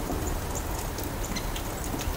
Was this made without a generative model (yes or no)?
yes